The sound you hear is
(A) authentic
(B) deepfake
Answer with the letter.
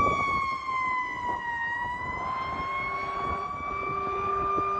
A